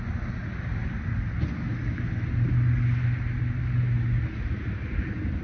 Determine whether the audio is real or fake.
real